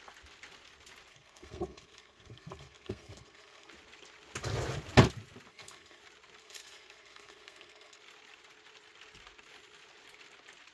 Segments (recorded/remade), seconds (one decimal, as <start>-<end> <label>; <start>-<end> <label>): 0.0-1.1 recorded; 1.1-3.7 remade; 3.7-5.5 recorded; 5.5-6.0 remade; 6.0-6.4 recorded; 6.4-8.0 remade; 8.0-10.7 recorded